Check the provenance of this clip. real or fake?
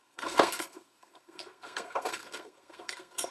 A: fake